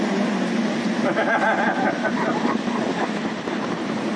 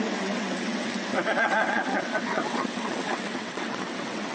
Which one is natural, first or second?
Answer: first